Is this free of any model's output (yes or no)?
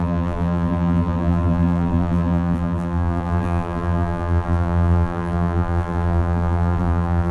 no